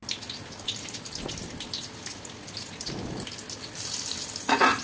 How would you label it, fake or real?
real